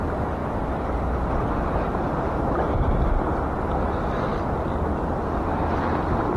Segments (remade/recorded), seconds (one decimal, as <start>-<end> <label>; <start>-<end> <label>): 0.0-6.4 recorded